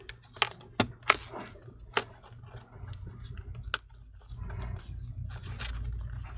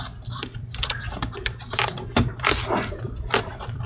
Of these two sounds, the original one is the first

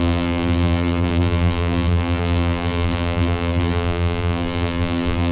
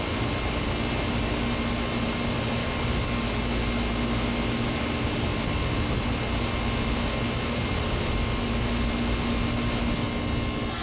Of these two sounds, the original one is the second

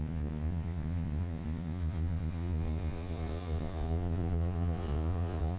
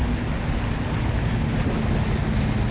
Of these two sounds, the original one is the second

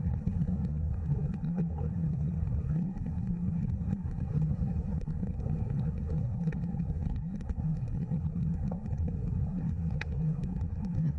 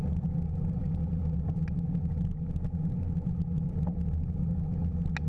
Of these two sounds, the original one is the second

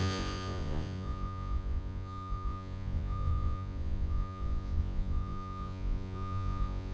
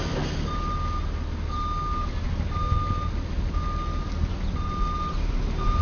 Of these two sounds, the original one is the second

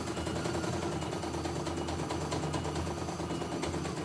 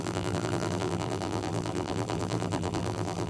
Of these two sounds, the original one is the first